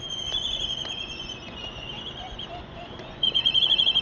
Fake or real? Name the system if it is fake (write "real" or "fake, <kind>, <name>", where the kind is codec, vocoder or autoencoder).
fake, vocoder, Vocos